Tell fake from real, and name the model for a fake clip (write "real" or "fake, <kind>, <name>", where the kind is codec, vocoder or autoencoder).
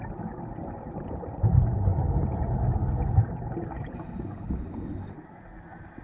real